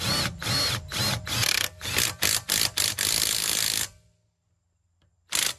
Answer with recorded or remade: recorded